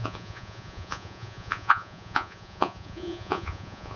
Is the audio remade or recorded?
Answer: remade